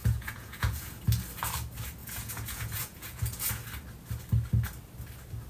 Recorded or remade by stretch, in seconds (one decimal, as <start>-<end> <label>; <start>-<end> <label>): 0.0-1.0 remade; 1.0-2.0 recorded; 2.0-3.5 remade; 3.5-5.5 recorded